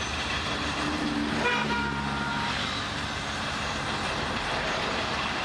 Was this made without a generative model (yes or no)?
no